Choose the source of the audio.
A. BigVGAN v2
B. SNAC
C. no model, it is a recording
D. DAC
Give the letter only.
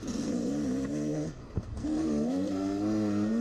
B